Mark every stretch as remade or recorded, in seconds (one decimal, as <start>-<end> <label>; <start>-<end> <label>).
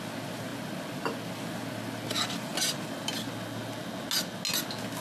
0.0-5.0 recorded